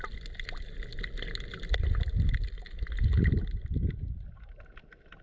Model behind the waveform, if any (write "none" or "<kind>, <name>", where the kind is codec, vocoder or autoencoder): none